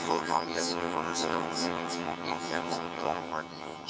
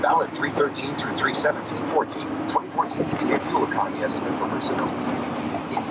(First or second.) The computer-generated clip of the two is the first